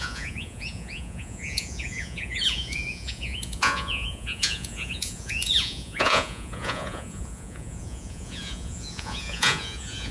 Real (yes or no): no